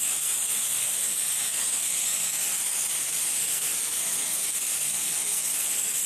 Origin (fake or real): fake